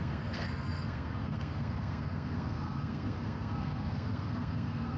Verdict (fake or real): fake